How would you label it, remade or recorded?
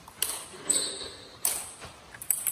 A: recorded